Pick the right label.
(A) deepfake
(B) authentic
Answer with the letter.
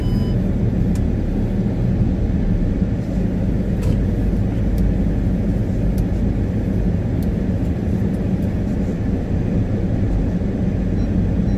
B